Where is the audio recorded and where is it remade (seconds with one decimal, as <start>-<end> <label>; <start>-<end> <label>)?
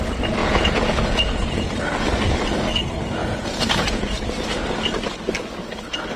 0.0-0.4 recorded; 0.4-1.8 remade; 1.8-3.2 recorded; 3.2-4.0 remade; 4.0-6.2 recorded